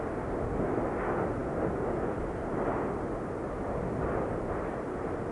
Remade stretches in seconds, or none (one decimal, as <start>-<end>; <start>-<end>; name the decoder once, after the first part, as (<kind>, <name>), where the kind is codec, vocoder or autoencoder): none